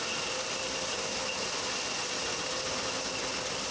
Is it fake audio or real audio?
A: real